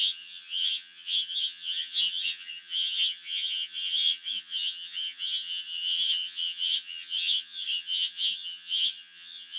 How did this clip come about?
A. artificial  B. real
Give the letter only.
A